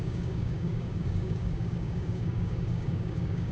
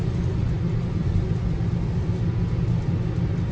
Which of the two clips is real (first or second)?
second